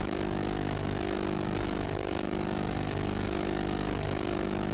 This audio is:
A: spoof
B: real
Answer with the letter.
A